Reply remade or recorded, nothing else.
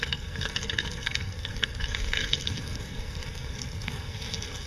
remade